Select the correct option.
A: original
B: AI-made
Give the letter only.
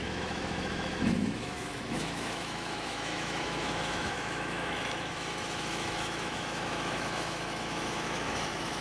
B